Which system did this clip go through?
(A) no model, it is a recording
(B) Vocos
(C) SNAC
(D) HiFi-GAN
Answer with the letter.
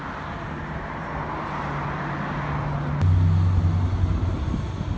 A